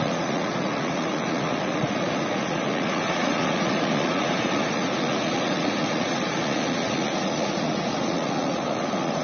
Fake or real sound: fake